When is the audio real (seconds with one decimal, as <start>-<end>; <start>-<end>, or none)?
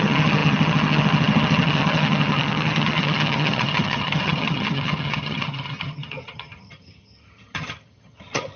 none